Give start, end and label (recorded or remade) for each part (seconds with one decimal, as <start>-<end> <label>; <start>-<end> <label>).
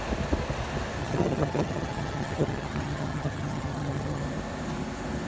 0.0-1.0 recorded; 1.0-4.2 remade; 4.2-5.3 recorded